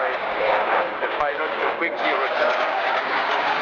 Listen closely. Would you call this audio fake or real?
fake